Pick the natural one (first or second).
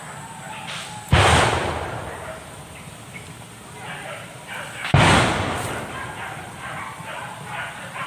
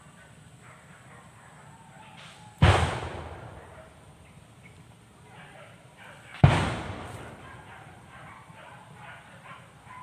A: first